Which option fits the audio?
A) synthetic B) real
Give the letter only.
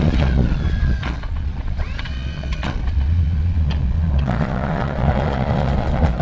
A